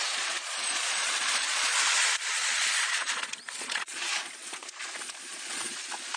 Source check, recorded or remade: remade